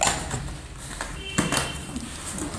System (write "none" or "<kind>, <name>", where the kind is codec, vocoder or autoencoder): none